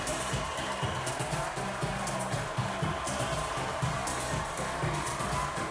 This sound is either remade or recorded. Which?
recorded